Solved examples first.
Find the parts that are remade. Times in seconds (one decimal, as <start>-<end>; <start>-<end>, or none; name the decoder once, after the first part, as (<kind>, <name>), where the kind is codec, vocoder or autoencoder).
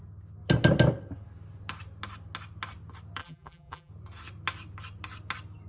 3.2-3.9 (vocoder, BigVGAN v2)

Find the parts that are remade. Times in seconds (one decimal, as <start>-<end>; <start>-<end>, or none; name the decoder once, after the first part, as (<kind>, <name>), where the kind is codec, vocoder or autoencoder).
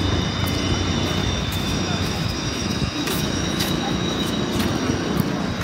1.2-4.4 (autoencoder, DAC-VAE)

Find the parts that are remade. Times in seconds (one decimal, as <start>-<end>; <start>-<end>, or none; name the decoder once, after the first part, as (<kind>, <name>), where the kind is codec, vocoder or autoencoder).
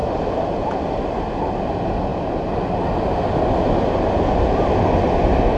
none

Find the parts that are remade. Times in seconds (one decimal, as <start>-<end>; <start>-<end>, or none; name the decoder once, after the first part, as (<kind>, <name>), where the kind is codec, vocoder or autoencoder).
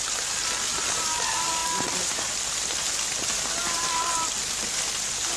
none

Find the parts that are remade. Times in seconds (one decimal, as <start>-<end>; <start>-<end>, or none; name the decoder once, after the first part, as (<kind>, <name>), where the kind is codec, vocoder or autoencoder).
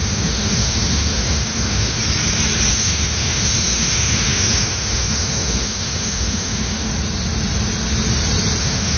0.0-2.0 (autoencoder, DAC-VAE); 2.7-6.9; 8.6-9.0